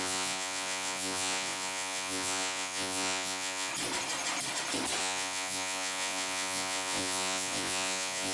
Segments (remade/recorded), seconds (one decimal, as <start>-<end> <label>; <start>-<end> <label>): 0.0-3.7 remade; 3.7-5.0 recorded; 5.0-8.3 remade